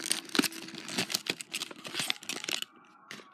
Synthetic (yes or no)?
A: no